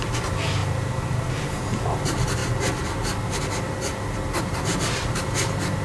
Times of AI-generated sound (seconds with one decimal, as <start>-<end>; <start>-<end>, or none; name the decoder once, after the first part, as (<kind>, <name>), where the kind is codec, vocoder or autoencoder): 0.0-2.4 (vocoder, BigVGAN v2); 4.4-5.8